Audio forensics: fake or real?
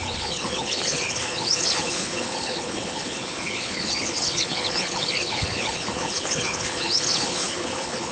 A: fake